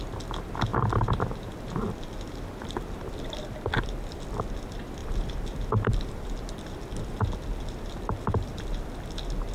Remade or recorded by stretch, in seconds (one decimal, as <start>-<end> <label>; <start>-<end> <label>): 0.0-5.0 recorded; 5.0-7.2 remade; 7.2-9.5 recorded